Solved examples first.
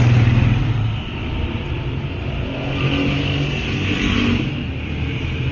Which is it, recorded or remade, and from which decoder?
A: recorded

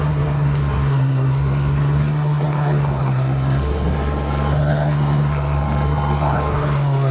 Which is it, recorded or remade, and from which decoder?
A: remade, codec, SNAC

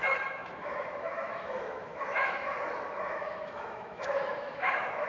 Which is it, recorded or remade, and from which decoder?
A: remade, autoencoder, DAC-VAE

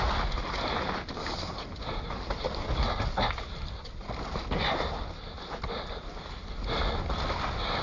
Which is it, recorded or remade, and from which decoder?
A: recorded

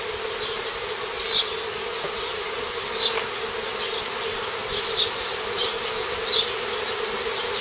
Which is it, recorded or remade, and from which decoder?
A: recorded